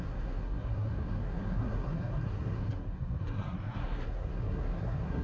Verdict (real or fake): fake